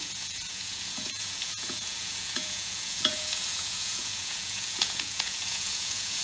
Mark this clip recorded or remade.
remade